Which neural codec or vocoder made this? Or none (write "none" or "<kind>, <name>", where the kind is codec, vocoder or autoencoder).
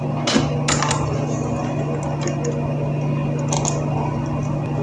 none